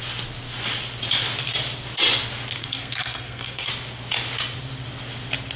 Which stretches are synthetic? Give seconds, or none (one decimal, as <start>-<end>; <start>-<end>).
2.6-3.7